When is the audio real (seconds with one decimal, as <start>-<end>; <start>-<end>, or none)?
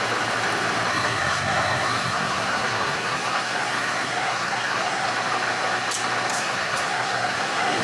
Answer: 0.0-0.9; 5.1-6.3